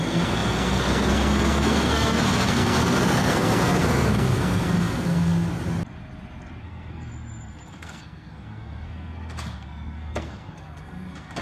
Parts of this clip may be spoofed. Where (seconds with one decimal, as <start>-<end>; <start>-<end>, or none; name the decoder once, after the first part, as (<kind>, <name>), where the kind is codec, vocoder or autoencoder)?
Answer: 0.0-5.5 (codec, SNAC); 6.6-7.1; 7.7-11.4